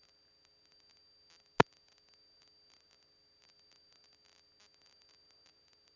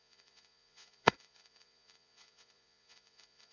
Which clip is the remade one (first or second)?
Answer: second